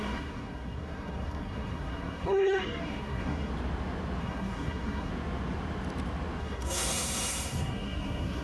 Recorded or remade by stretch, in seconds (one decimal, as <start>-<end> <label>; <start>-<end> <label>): 0.0-3.5 remade; 3.5-4.2 recorded; 4.2-5.1 remade; 5.1-6.4 recorded; 6.4-8.4 remade